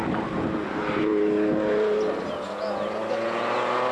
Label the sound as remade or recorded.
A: recorded